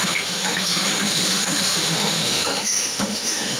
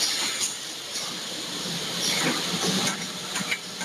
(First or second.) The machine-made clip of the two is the first